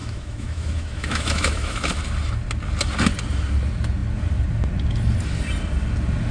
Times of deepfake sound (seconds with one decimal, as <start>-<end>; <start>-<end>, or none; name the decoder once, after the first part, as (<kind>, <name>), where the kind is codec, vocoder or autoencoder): 0.0-2.0 (autoencoder, DAC-VAE)